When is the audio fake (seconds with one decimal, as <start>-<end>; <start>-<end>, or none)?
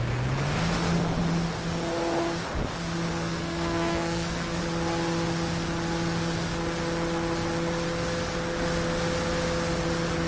3.1-4.6